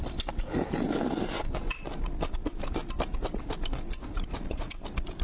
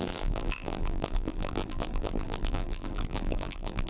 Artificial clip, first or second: second